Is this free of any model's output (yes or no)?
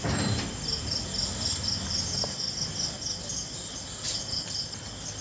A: yes